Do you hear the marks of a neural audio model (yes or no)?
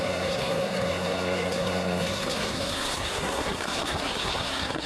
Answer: yes